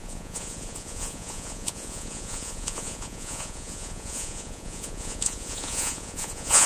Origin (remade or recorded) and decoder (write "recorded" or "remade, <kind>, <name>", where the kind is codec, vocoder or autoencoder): remade, vocoder, Vocos